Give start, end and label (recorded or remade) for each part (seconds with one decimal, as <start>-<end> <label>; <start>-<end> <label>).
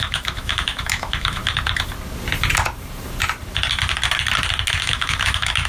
0.0-1.4 remade; 1.4-4.8 recorded; 4.8-5.7 remade